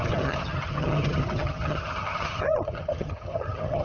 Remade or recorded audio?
remade